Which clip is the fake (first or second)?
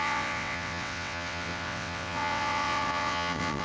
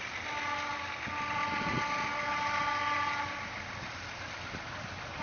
first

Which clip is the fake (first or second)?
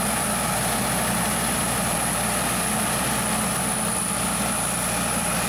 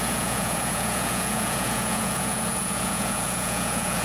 second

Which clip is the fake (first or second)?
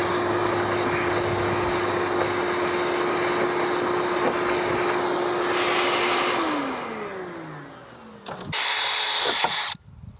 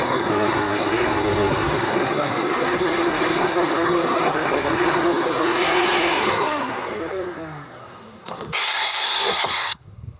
second